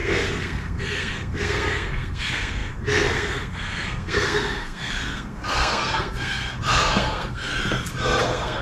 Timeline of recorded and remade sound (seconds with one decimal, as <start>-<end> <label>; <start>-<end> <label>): 0.0-7.5 remade; 7.5-8.2 recorded; 8.2-8.6 remade